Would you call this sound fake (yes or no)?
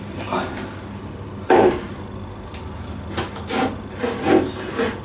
no